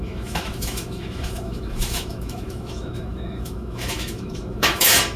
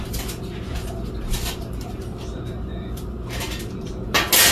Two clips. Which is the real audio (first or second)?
second